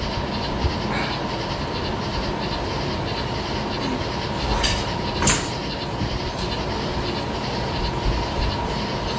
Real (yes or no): yes